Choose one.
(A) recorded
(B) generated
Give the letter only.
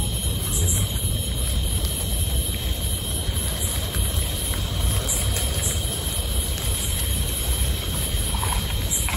B